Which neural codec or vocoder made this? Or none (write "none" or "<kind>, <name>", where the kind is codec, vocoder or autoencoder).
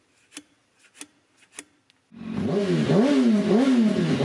none